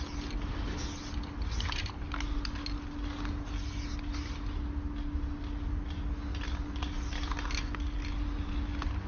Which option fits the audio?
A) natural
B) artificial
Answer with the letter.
A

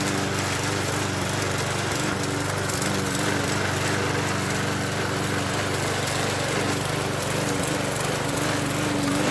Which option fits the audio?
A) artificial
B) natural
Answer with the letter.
B